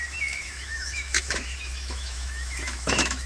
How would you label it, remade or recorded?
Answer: remade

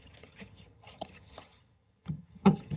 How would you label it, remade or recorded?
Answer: remade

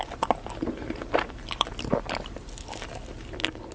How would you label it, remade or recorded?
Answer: recorded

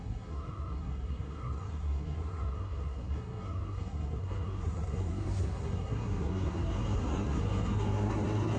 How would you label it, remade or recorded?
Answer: remade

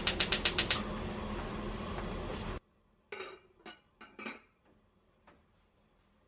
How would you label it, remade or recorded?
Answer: recorded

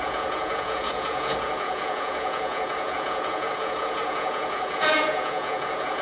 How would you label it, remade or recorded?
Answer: remade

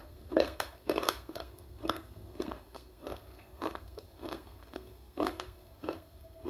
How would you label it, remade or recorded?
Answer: remade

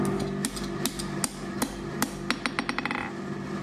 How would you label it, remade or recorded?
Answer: recorded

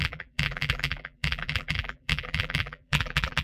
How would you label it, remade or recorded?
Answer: remade